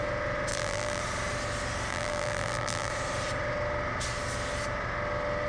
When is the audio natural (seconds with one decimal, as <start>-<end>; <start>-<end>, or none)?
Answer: 0.0-0.5; 1.0-1.9; 2.9-5.5